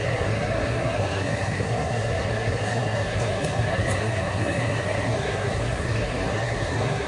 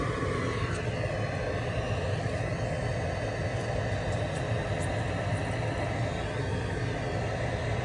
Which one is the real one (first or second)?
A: second